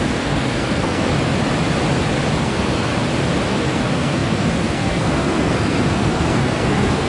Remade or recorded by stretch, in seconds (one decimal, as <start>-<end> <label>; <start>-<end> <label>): 0.0-1.1 remade; 1.1-2.4 recorded; 2.4-2.9 remade; 2.9-3.5 recorded; 3.5-7.1 remade